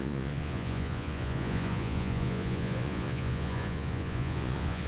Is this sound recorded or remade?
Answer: remade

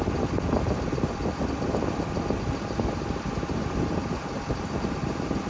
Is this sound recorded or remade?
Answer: recorded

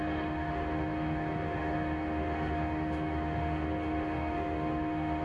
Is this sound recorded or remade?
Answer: remade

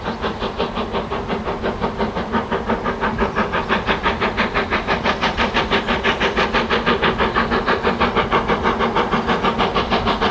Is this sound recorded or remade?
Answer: recorded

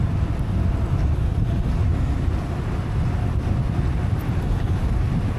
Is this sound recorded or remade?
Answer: recorded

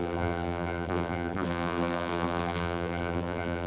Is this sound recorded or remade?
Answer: remade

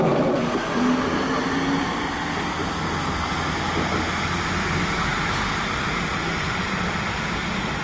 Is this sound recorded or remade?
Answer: recorded